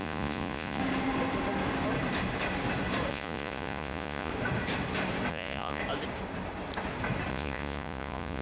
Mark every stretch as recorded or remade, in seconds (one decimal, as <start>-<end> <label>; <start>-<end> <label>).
0.0-0.8 remade; 0.8-3.1 recorded; 3.1-4.3 remade; 4.3-5.3 recorded; 5.3-5.8 remade; 5.8-7.3 recorded; 7.3-8.4 remade